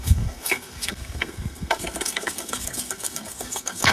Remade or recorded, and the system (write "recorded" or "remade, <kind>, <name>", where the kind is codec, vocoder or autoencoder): remade, codec, SNAC